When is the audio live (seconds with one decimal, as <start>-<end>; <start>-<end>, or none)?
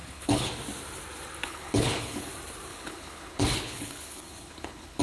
0.5-1.4; 2.3-2.7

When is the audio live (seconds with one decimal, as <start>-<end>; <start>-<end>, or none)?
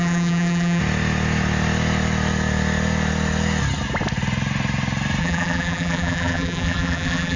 0.8-5.2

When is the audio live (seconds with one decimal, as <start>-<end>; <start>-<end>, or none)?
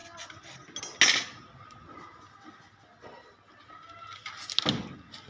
0.0-5.3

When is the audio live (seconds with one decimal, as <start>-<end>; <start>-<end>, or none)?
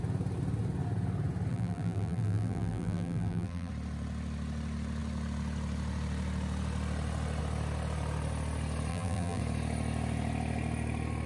0.0-1.5; 3.7-8.9; 9.4-11.3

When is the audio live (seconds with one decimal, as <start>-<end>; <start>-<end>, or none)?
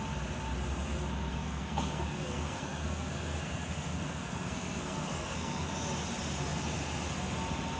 0.0-1.3; 5.7-7.8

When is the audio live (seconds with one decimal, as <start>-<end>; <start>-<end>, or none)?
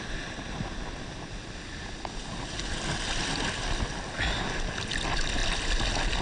0.0-6.2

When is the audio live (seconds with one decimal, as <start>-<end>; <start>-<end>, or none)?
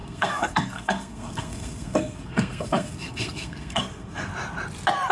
4.3-5.1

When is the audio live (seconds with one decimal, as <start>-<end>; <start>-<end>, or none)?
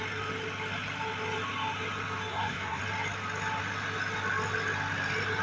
0.0-2.3; 2.8-5.4